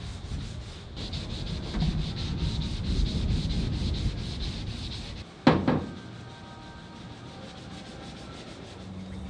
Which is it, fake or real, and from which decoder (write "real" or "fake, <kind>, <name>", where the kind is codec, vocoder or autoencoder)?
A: real